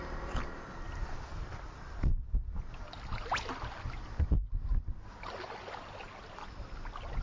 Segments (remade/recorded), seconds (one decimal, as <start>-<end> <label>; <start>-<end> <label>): 0.0-7.2 recorded